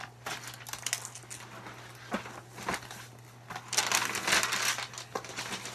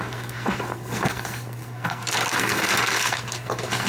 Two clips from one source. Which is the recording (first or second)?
first